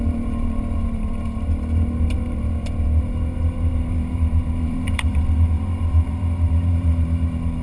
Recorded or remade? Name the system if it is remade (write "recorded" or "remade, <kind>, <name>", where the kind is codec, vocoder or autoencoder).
remade, vocoder, BigVGAN v2